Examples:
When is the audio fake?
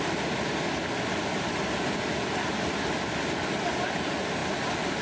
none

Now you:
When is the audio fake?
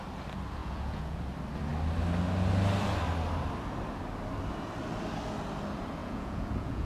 0.6-1.2 (vocoder, Vocos); 6.0-6.9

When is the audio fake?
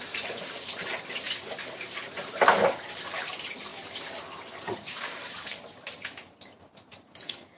0.0-0.9 (vocoder, BigVGAN v2); 1.7-7.6